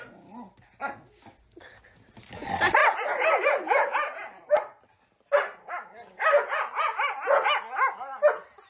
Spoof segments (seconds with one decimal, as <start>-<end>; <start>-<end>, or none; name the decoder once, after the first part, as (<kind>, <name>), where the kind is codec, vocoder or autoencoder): none